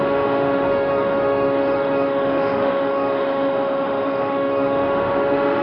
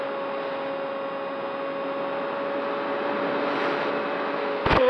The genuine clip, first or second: second